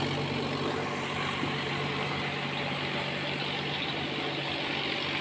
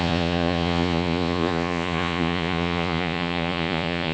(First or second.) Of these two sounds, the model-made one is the second